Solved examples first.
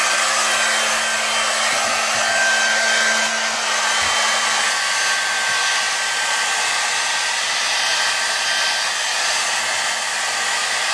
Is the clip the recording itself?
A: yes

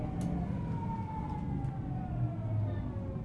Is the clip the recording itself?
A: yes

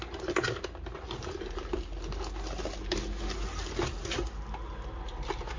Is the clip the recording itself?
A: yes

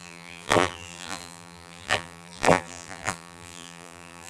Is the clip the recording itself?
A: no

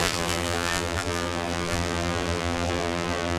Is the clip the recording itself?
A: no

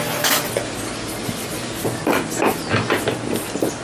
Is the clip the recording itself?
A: yes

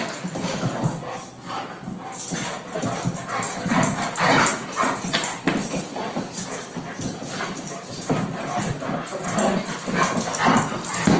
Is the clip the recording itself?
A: yes